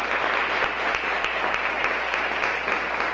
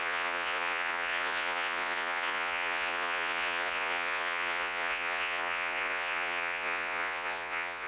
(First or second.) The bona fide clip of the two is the first